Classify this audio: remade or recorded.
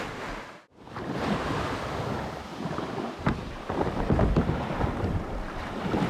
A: recorded